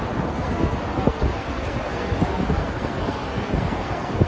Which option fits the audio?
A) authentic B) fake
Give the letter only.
B